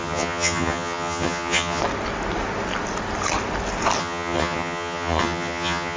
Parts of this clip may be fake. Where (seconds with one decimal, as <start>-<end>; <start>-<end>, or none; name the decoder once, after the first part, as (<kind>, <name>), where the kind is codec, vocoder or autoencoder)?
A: 0.0-1.8 (vocoder, HiFi-GAN); 4.0-6.0